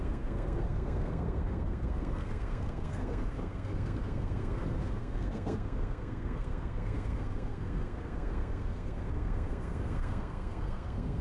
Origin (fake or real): fake